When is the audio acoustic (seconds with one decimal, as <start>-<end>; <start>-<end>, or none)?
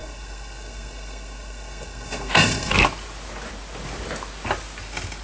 2.7-5.2